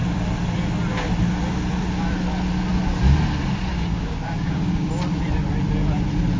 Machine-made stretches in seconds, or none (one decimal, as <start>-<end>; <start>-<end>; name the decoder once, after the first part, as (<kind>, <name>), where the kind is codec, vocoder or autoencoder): 3.7-4.9 (codec, DAC)